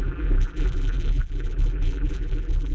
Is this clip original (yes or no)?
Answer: no